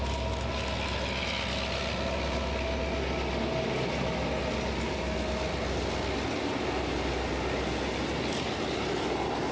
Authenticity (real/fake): real